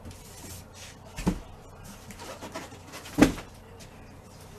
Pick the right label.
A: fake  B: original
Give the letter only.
B